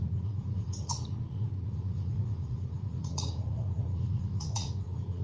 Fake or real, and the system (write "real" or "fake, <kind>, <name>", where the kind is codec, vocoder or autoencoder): fake, vocoder, Vocos